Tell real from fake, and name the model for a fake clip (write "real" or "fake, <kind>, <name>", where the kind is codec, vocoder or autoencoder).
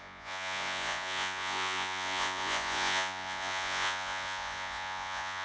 fake, vocoder, Vocos